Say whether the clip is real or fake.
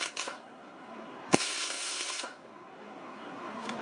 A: fake